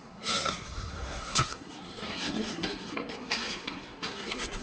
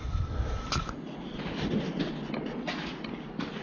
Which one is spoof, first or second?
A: first